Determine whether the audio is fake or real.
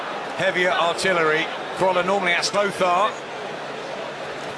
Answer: real